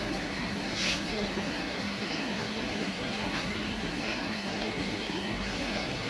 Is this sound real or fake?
fake